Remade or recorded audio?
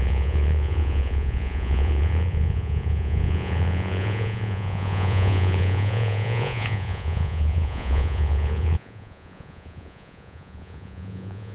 remade